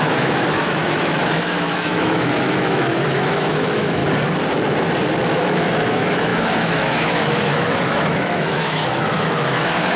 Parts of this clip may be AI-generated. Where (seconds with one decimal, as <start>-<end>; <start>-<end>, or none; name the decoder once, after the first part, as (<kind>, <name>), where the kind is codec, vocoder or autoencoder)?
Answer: 0.0-4.0 (autoencoder, DAC-VAE); 5.3-10.0